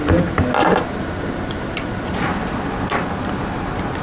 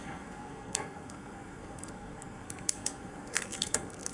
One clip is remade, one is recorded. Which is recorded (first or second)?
first